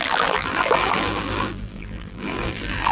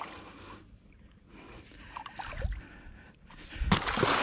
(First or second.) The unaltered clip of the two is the second